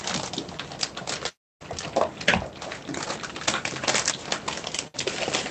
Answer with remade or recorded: recorded